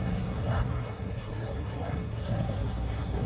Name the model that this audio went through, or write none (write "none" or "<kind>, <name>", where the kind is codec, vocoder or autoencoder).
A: codec, SNAC